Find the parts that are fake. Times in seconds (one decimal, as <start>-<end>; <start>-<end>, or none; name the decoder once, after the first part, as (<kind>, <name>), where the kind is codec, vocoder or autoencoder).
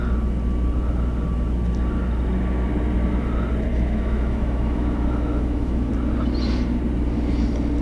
3.7-5.9 (autoencoder, DAC-VAE)